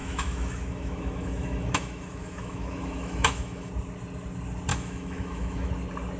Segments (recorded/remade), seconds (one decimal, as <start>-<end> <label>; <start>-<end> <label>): 0.0-3.7 remade; 3.7-4.7 recorded; 4.7-5.7 remade; 5.7-6.2 recorded